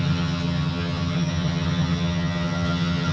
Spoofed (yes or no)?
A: yes